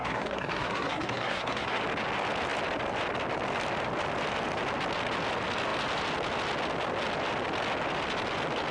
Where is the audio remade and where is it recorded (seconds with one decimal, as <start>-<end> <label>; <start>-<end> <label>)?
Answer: 0.0-1.8 remade; 1.8-8.7 recorded